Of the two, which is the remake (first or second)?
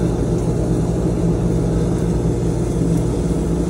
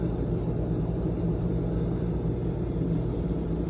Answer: second